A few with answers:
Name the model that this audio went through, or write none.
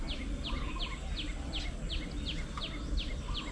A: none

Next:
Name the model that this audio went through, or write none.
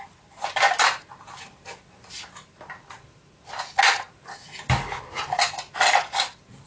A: none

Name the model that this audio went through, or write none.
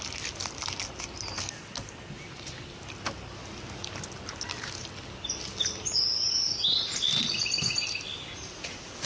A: none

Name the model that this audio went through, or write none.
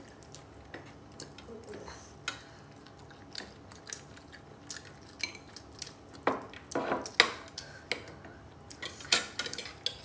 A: none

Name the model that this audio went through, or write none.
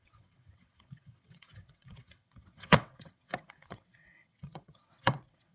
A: vocoder, WaveNeXt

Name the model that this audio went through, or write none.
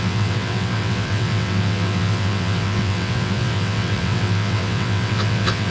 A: vocoder, WaveNeXt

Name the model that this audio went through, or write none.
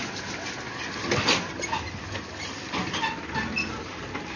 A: none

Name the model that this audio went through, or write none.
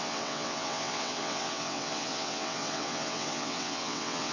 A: vocoder, WaveNeXt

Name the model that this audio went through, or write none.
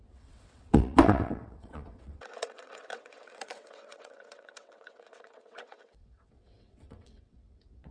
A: vocoder, WaveNeXt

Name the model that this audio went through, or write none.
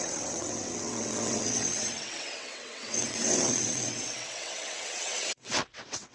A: vocoder, WaveNeXt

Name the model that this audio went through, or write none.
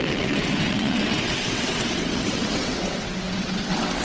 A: vocoder, WaveNeXt